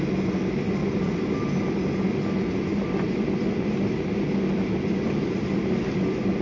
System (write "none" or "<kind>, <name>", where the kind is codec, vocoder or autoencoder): none